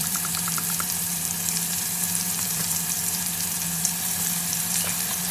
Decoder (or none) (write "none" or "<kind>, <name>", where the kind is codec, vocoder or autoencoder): vocoder, BigVGAN v2